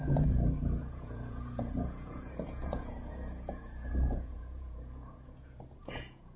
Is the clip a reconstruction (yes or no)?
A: yes